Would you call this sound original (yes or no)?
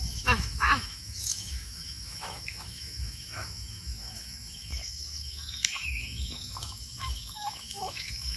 no